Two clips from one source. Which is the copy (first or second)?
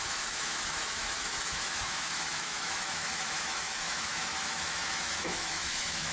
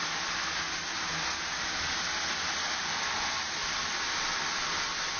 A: first